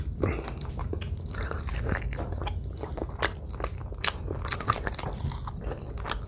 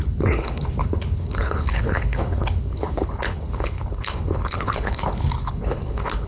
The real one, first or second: first